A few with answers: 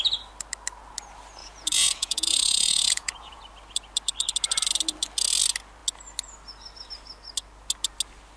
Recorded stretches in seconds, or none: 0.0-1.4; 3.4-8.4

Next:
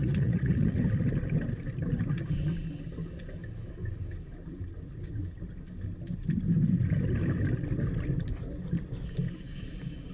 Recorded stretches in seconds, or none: 0.7-10.1